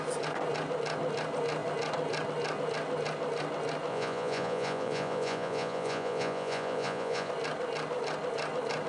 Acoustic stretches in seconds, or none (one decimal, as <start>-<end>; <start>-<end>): 0.0-3.9; 7.3-8.9